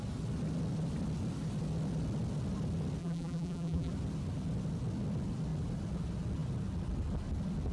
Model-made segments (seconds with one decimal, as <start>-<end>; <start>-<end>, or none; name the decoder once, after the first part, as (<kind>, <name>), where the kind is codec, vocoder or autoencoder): 3.0-3.9 (vocoder, BigVGAN v2)